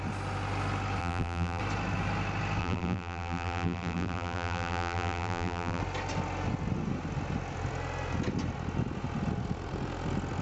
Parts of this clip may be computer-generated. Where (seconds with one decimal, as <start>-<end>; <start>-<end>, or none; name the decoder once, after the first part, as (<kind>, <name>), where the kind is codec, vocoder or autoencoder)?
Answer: 1.0-1.6 (vocoder, BigVGAN v2); 2.6-5.8